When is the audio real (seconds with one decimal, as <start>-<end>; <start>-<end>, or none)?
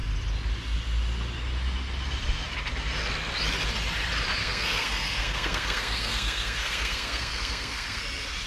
0.0-4.4; 8.0-8.5